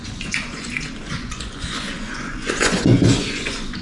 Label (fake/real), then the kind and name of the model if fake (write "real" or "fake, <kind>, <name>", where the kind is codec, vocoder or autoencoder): fake, vocoder, Vocos